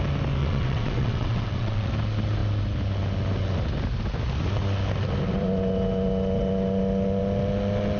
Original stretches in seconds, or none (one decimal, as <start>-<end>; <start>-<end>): 0.0-0.4; 1.9-8.0